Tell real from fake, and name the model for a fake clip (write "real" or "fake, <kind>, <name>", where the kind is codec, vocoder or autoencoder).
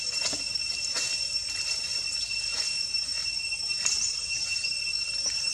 real